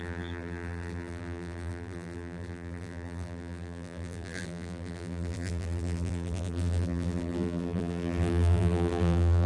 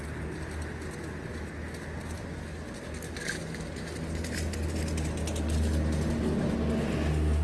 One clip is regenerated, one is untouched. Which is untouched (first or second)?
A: second